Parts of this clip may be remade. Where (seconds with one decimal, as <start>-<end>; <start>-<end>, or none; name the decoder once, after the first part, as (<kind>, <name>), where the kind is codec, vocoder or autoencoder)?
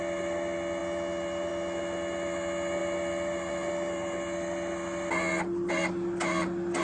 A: none